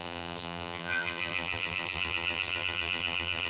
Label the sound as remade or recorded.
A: remade